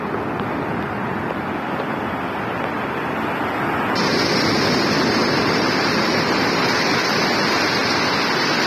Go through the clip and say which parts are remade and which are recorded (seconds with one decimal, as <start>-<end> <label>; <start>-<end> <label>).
0.0-5.4 recorded; 5.4-7.2 remade; 7.2-8.7 recorded